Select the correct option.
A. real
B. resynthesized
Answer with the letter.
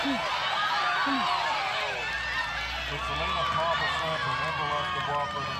A